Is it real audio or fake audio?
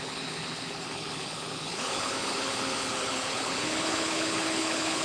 fake